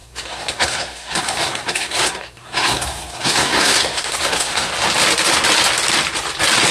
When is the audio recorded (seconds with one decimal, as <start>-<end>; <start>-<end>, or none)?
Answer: 4.7-6.7